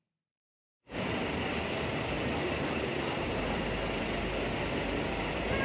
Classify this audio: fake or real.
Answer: real